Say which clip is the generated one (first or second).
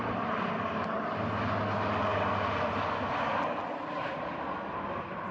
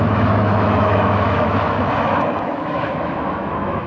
second